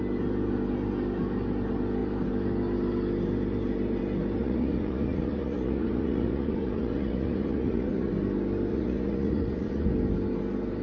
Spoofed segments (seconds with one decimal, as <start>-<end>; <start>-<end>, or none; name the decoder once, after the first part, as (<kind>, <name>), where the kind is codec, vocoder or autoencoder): 4.4-8.1 (vocoder, Vocos); 8.7-9.9